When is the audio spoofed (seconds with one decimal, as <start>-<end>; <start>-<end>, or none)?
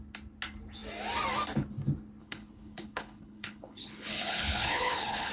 2.2-5.3